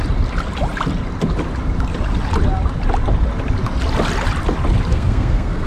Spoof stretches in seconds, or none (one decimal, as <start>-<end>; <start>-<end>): 4.9-5.7